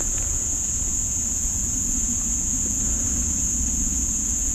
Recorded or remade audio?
remade